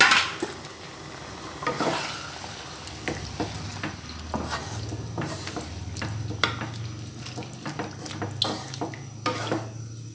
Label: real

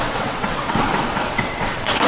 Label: fake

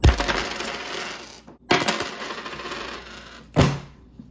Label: real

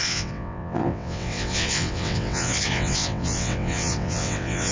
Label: fake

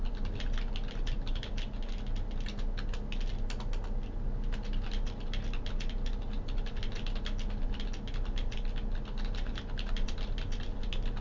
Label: real